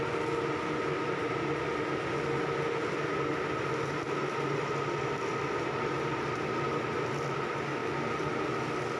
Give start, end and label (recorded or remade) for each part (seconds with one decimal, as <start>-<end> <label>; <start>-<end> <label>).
0.0-7.8 recorded; 7.8-8.4 remade; 8.4-9.0 recorded